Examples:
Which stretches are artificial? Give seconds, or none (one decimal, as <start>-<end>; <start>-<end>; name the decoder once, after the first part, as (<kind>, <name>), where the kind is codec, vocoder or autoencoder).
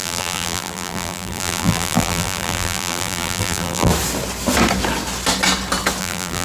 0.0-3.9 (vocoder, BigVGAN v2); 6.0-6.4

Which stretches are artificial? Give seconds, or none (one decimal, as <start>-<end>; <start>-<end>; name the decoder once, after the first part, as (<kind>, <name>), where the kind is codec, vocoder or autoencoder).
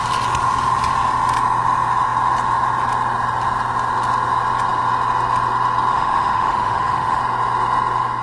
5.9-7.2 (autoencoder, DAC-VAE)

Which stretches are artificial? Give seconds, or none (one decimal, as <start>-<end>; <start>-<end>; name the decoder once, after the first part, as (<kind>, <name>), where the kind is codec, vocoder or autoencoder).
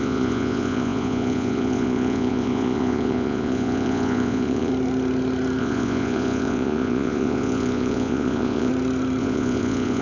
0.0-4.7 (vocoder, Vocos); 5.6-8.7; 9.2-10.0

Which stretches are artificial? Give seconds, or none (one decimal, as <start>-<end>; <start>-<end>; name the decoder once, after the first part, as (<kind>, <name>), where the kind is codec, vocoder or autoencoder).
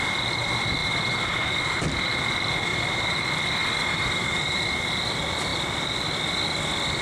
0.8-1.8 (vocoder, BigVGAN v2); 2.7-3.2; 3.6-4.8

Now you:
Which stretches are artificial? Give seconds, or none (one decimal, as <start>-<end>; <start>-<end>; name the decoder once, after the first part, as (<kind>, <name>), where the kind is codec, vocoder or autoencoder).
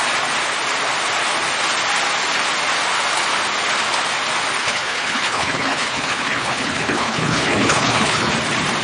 4.6-8.3 (codec, HILCodec)